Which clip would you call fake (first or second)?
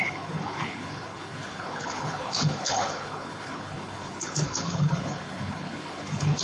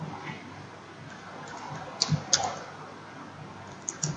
first